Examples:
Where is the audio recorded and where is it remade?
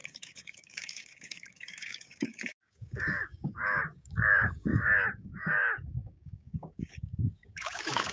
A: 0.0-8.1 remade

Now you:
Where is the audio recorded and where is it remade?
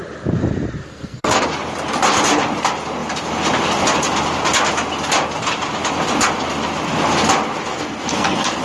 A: 0.0-0.8 recorded; 0.8-1.5 remade; 1.5-7.7 recorded; 7.7-8.6 remade